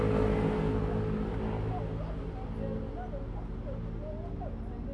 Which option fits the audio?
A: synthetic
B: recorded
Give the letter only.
B